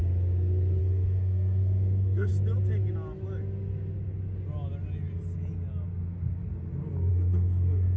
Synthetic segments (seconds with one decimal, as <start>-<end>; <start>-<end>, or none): 0.8-2.3; 7.1-8.0